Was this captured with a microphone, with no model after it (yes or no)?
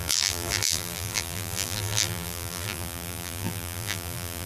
no